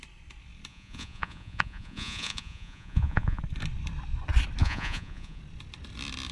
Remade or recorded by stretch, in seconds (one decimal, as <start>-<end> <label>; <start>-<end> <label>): 0.0-0.7 recorded; 0.7-3.4 remade; 3.4-4.6 recorded; 4.6-5.4 remade; 5.4-6.3 recorded